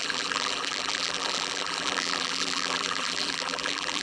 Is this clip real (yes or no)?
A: no